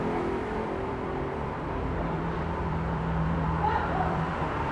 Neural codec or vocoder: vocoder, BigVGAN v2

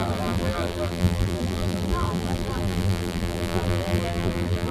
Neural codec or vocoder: vocoder, BigVGAN v2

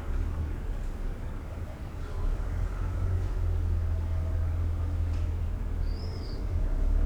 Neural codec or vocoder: codec, DAC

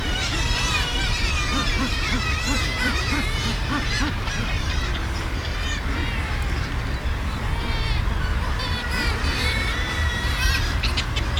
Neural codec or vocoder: vocoder, BigVGAN v2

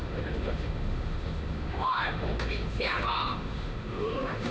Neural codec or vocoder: autoencoder, DAC-VAE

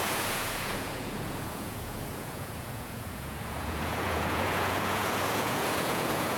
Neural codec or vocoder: vocoder, Vocos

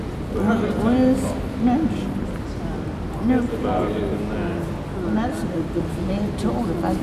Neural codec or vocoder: none